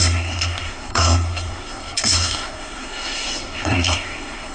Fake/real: fake